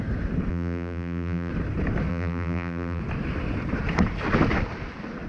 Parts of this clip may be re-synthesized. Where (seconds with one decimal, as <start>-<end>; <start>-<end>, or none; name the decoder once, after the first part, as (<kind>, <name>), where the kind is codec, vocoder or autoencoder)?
0.5-1.5 (vocoder, BigVGAN v2); 2.1-3.0